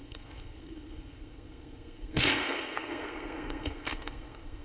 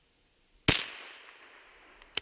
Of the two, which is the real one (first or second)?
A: second